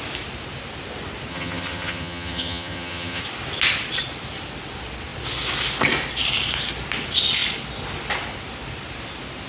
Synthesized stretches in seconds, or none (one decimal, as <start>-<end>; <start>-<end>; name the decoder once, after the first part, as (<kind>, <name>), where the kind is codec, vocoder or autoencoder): 1.3-3.2 (vocoder, HiFi-GAN)